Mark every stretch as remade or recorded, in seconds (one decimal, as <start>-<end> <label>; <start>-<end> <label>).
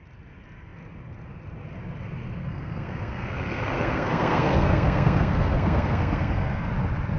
0.0-2.4 recorded; 2.4-6.7 remade; 6.7-7.2 recorded